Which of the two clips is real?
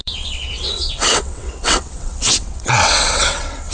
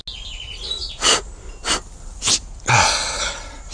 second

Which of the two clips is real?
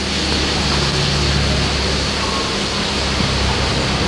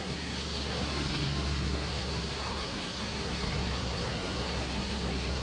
first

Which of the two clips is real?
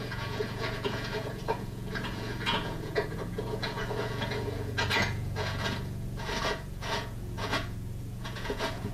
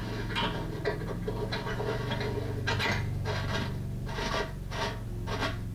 second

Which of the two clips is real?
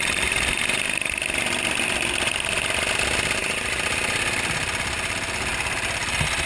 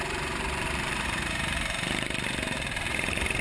first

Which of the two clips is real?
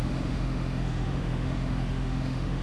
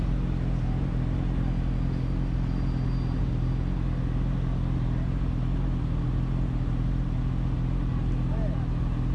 second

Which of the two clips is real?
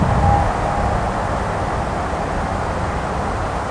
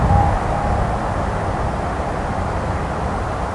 first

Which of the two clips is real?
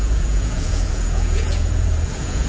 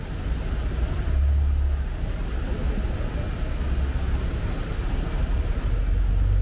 second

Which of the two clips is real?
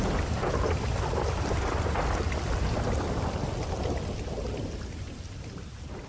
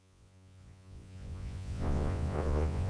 first